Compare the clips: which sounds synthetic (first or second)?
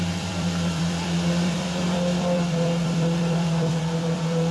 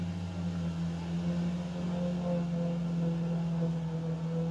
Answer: first